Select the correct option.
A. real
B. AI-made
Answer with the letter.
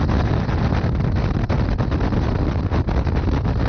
A